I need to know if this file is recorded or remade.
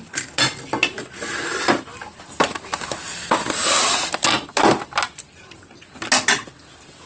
recorded